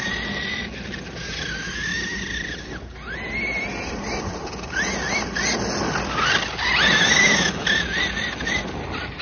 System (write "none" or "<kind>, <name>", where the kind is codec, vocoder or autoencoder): none